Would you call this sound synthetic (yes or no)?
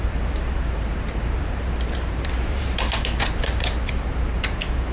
yes